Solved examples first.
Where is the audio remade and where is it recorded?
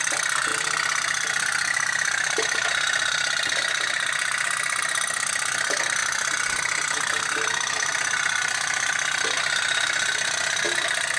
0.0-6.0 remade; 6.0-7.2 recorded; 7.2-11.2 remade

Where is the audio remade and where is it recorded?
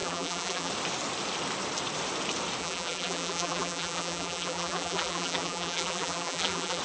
0.0-0.7 remade; 0.7-2.6 recorded; 2.6-6.8 remade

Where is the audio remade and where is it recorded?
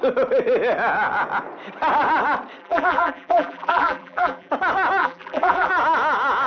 0.0-2.6 recorded; 2.6-4.5 remade; 4.5-5.0 recorded; 5.0-5.7 remade; 5.7-6.5 recorded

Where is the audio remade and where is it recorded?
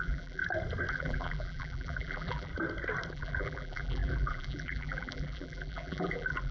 0.0-0.4 remade; 0.4-0.9 recorded; 0.9-2.5 remade; 2.5-3.1 recorded; 3.1-6.5 remade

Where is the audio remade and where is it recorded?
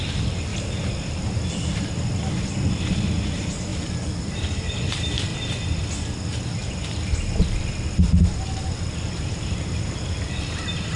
0.0-0.5 remade; 0.5-3.3 recorded; 3.3-5.3 remade; 5.3-9.3 recorded; 9.3-11.0 remade